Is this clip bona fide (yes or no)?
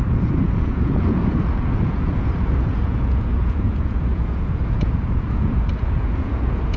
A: no